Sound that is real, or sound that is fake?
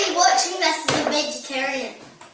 real